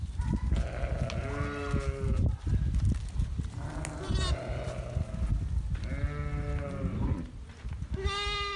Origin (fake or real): real